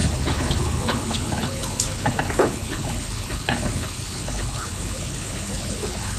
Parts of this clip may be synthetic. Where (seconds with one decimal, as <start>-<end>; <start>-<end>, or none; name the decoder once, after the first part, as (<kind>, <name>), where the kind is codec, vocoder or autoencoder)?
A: 0.0-6.2 (codec, HILCodec)